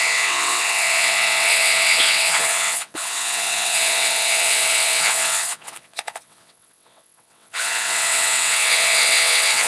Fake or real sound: fake